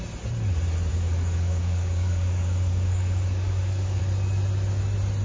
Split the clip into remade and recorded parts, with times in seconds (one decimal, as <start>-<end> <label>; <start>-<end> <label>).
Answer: 0.0-0.9 recorded; 0.9-4.0 remade; 4.0-5.2 recorded